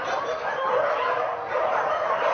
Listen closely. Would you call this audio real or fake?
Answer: real